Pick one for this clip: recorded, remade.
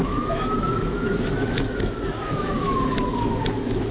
remade